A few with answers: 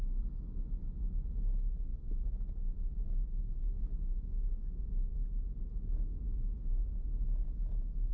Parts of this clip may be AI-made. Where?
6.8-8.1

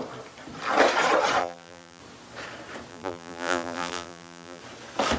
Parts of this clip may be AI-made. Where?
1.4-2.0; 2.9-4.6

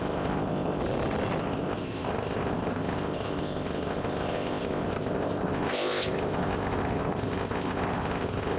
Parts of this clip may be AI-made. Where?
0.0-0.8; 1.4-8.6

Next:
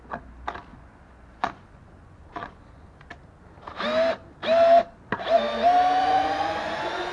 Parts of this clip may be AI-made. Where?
0.7-3.1; 6.0-7.1

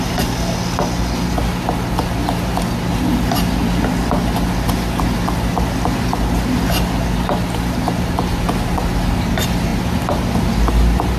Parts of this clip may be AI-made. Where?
none